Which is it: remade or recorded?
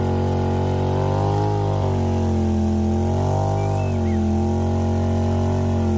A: recorded